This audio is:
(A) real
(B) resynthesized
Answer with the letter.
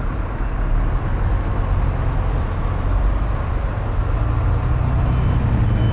A